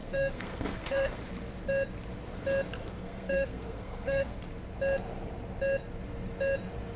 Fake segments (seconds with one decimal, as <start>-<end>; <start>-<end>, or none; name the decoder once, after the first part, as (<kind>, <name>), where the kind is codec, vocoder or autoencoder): 0.0-1.2 (codec, SNAC); 2.8-4.4